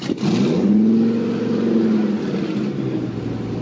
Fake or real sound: real